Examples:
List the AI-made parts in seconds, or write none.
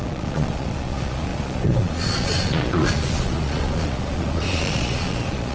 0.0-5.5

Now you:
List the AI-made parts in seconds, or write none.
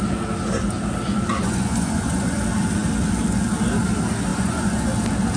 1.3-2.4; 4.3-4.9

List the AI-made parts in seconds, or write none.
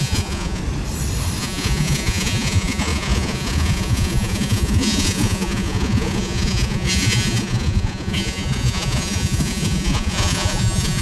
0.0-0.6; 1.4-11.0